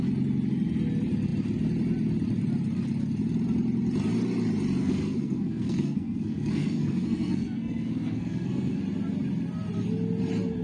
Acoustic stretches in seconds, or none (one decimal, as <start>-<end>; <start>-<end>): 0.0-4.8; 8.8-10.6